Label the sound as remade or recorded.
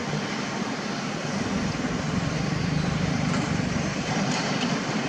recorded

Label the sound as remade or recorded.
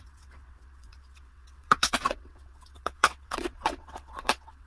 remade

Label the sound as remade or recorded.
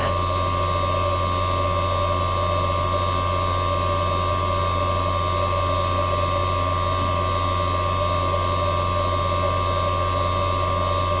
recorded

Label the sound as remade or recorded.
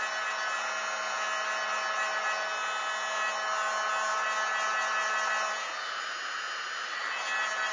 recorded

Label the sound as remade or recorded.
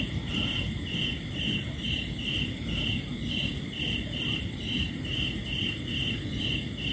remade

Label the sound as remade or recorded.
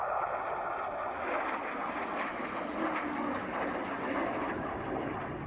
recorded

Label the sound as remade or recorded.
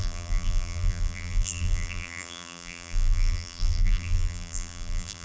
remade